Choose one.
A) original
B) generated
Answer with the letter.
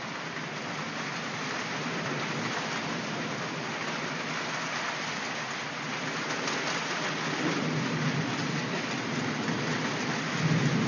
A